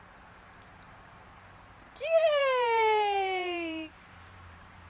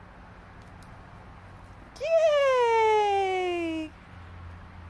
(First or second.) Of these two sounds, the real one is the second